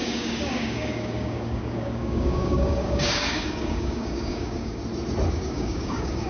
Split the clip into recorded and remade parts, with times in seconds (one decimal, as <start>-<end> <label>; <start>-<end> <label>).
0.0-4.8 remade; 4.8-5.3 recorded; 5.3-6.3 remade